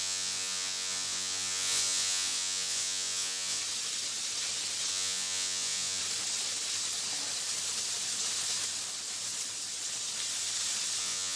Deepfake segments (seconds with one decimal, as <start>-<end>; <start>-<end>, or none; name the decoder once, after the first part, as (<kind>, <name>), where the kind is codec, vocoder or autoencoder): 0.0-3.6 (vocoder, Vocos); 4.9-6.0; 11.0-11.4